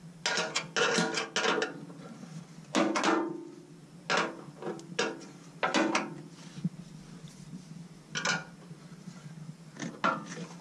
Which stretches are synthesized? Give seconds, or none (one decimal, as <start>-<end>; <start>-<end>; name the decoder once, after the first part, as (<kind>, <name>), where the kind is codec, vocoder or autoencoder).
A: none